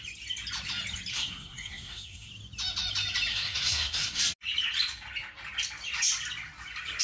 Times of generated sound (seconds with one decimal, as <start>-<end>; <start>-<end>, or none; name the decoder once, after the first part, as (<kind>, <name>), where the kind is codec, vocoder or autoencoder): 1.1-2.3 (codec, SNAC); 3.3-4.2